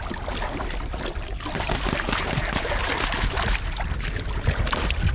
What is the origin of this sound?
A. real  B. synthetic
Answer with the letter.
A